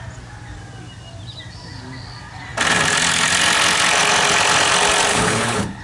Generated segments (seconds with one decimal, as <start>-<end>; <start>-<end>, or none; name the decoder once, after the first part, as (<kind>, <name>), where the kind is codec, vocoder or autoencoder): 5.1-5.8 (codec, HILCodec)